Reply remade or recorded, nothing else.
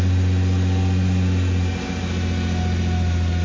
recorded